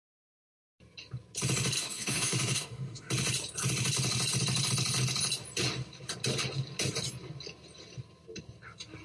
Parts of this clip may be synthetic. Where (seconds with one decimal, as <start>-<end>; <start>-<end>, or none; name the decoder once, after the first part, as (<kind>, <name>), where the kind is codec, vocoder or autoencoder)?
1.8-3.1 (autoencoder, DAC-VAE)